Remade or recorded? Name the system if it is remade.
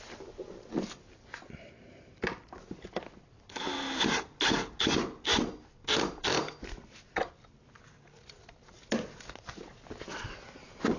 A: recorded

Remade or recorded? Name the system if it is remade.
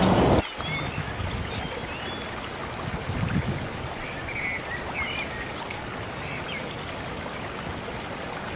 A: recorded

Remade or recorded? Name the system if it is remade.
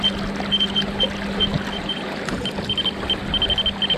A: recorded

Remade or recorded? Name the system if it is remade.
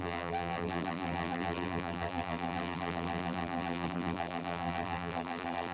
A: remade, vocoder, BigVGAN v2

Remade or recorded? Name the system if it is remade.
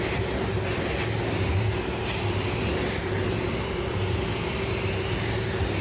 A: recorded